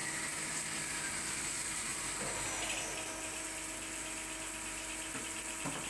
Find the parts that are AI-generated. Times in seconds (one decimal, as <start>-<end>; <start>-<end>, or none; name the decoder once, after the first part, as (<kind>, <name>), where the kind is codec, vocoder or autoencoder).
0.9-1.9 (vocoder, BigVGAN v2); 5.2-5.9